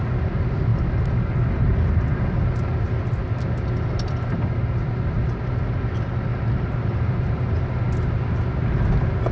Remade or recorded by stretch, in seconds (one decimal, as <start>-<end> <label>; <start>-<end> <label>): 0.0-6.3 recorded; 6.3-7.6 remade; 7.6-9.3 recorded